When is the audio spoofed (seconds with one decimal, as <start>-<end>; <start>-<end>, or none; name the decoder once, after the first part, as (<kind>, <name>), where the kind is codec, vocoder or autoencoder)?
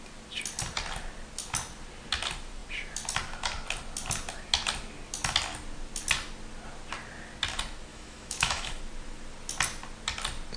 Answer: 7.9-8.8 (autoencoder, DAC-VAE)